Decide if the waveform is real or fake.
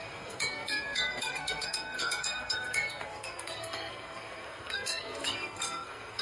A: fake